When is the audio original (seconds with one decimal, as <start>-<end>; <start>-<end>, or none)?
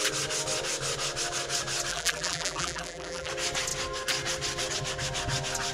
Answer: 0.0-1.9; 3.3-5.7